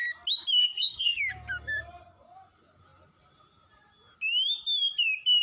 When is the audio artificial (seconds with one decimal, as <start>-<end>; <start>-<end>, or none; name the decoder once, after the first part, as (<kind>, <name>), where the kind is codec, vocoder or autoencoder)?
0.6-1.2 (codec, SNAC)